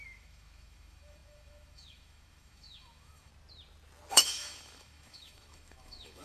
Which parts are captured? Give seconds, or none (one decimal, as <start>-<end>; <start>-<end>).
3.3-4.1